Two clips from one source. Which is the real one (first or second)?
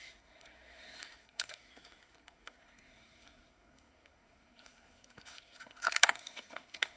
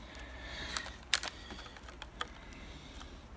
second